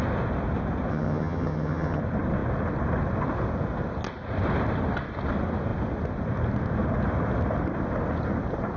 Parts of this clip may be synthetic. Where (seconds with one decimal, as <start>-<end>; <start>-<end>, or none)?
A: 0.9-2.0